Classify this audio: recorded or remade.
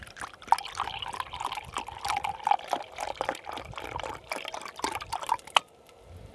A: recorded